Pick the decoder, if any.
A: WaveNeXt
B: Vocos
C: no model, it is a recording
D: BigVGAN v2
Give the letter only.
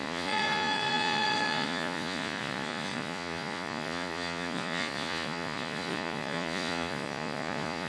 B